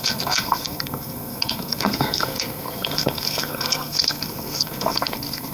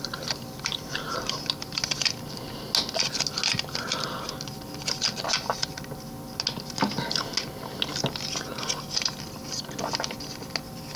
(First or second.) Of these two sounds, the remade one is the first